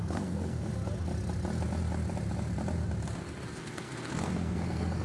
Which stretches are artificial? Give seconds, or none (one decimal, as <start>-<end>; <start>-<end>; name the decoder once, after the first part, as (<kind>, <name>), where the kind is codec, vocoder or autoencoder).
0.0-0.7 (codec, SNAC); 3.5-5.0